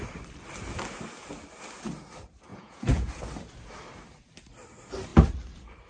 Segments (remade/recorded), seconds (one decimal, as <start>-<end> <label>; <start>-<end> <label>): 0.0-2.5 recorded; 2.5-3.1 remade; 3.1-5.9 recorded